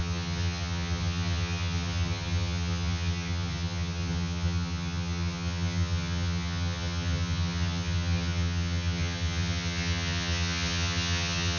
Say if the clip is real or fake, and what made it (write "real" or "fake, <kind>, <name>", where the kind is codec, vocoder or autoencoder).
fake, vocoder, HiFi-GAN